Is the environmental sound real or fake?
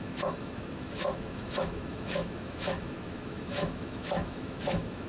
fake